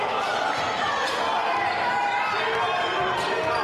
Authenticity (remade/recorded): recorded